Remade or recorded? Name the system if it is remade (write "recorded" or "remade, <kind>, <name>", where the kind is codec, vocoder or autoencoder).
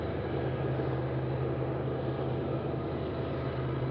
recorded